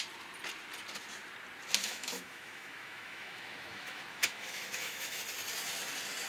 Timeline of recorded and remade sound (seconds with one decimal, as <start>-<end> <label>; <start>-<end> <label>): 0.0-1.8 recorded; 1.8-5.2 remade; 5.2-6.3 recorded